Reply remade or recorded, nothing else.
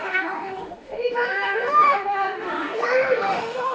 remade